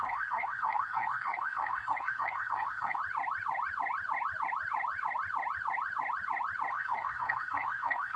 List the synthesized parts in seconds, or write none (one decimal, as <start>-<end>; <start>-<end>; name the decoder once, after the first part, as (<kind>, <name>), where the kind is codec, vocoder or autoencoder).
0.0-3.0 (codec, SNAC); 6.7-8.2